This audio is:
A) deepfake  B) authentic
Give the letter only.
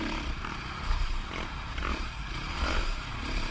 A